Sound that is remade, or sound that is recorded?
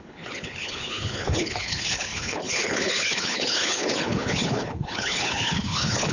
remade